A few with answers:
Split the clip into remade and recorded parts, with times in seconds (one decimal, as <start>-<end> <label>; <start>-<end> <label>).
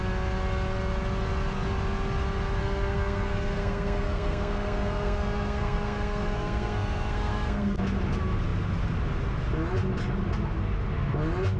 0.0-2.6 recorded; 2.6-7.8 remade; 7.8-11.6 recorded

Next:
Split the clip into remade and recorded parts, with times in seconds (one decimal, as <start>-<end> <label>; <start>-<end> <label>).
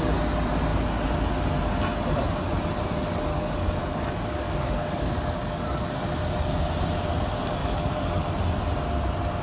0.0-3.3 recorded; 3.3-5.9 remade; 5.9-7.6 recorded; 7.6-8.4 remade; 8.4-9.4 recorded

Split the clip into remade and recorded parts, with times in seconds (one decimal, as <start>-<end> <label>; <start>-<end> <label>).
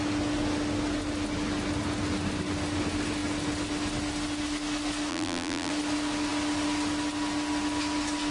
0.0-5.1 recorded; 5.1-5.7 remade; 5.7-8.3 recorded